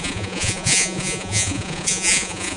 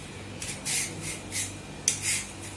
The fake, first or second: first